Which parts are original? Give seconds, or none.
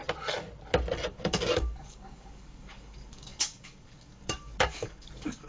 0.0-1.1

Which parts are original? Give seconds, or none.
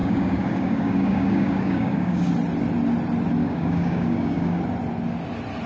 2.3-3.4; 4.6-5.7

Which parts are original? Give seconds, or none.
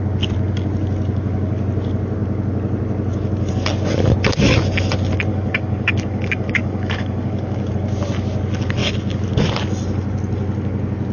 0.0-5.3; 7.7-11.1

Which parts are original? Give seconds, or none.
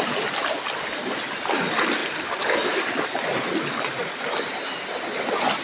0.0-5.6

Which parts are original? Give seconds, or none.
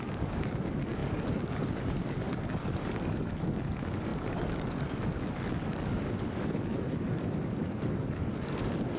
none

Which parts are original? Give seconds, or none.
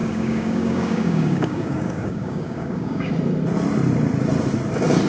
3.1-5.1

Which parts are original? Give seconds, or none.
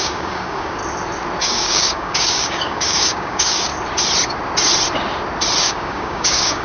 0.8-1.4; 3.7-5.6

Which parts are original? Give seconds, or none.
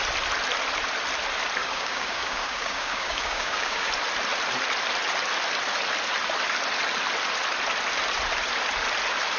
0.0-1.6; 3.9-9.4